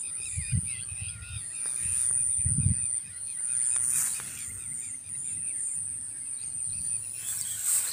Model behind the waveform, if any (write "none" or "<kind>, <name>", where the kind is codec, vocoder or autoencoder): none